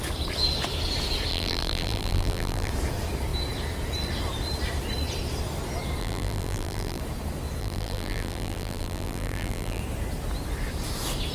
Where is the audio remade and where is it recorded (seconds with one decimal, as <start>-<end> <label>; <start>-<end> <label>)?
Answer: 0.0-1.3 recorded; 1.3-2.7 remade; 2.7-6.0 recorded; 6.0-7.0 remade; 7.0-7.6 recorded; 7.6-9.8 remade; 9.8-11.3 recorded